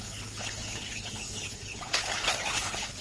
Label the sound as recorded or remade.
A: remade